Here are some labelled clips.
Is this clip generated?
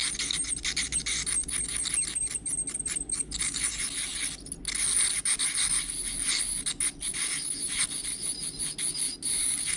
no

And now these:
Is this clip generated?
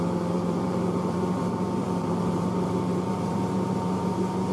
yes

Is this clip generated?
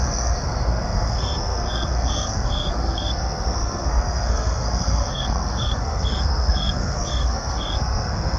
yes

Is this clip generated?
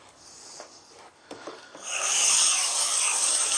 yes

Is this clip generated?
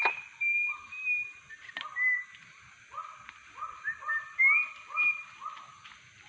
no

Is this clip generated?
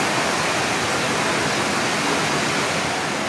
no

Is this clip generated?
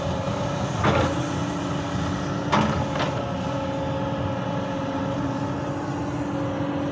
no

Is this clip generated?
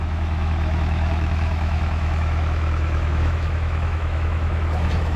yes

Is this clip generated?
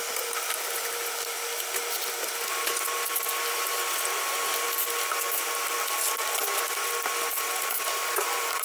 no